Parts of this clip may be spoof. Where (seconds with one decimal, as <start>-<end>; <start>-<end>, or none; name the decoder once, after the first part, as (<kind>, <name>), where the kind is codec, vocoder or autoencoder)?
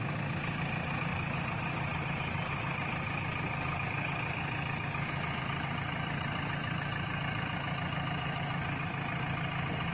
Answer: none